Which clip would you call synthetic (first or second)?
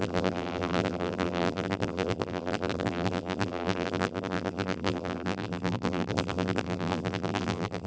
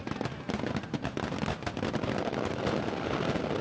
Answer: first